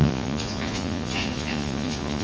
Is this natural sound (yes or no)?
no